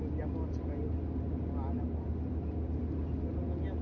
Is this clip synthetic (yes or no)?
no